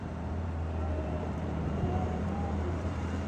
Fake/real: fake